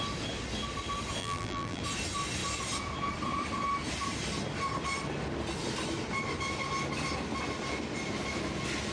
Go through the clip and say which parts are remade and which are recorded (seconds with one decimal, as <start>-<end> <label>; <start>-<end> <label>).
0.0-1.2 recorded; 1.2-1.8 remade; 1.8-8.9 recorded